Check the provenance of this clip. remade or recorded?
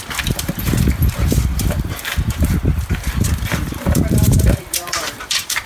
remade